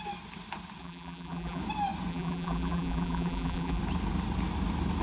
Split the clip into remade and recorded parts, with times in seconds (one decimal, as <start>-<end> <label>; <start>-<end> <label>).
0.0-0.8 recorded; 0.8-1.6 remade; 1.6-2.1 recorded; 2.1-3.8 remade; 3.8-5.0 recorded